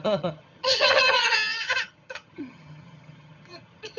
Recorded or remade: remade